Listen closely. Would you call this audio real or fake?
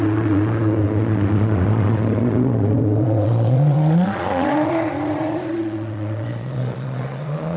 fake